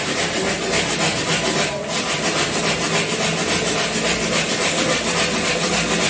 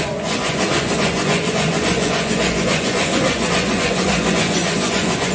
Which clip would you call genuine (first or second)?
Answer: first